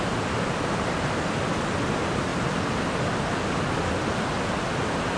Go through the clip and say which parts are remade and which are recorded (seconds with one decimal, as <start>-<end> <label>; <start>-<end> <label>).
0.0-5.2 recorded